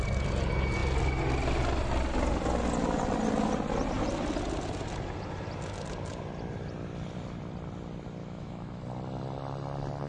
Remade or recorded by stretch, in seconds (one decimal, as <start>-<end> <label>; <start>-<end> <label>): 0.0-8.2 recorded; 8.2-8.8 remade; 8.8-10.1 recorded